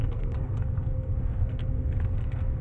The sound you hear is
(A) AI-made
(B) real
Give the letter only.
A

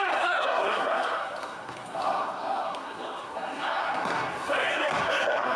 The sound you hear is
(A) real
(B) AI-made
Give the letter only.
B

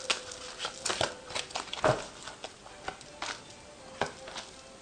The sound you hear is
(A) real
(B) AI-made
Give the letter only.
A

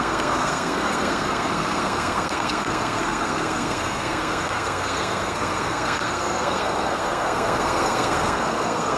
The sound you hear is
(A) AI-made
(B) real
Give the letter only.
A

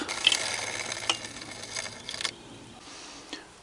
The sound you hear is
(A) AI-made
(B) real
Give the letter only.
B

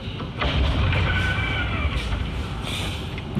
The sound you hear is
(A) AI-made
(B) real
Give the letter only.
B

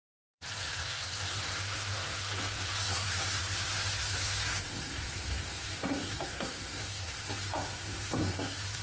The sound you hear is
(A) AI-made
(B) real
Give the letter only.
A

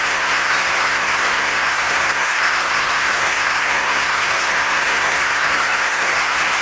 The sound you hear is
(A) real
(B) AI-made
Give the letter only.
B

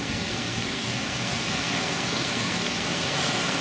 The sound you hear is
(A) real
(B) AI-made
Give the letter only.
B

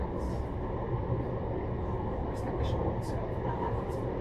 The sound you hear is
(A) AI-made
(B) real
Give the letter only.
B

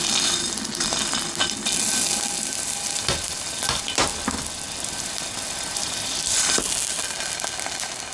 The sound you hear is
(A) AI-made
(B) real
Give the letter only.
B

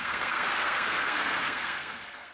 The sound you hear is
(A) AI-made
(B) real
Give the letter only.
A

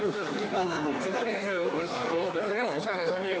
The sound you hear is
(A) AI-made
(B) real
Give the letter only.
A